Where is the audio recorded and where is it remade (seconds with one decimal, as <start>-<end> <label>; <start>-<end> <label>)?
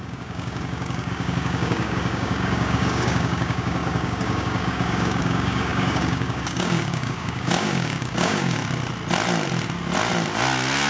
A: 0.0-8.6 remade; 8.6-10.9 recorded